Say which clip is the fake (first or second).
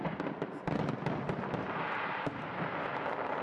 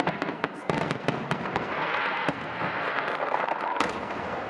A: second